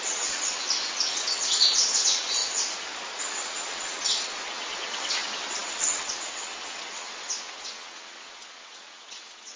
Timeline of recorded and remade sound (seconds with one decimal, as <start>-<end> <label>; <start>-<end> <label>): 0.0-2.4 remade; 2.4-3.2 recorded; 3.2-9.6 remade